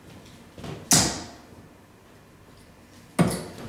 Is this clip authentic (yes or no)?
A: yes